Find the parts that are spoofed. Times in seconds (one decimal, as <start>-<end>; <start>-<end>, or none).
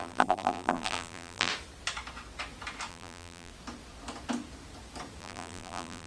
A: 0.0-1.5; 2.9-3.5; 5.2-6.1